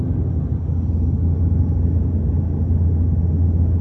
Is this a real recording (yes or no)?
yes